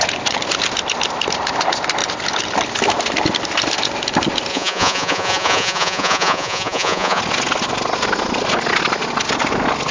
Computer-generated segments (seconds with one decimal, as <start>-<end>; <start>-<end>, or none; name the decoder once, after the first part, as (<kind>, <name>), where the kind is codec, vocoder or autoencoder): 4.5-7.2 (vocoder, Vocos)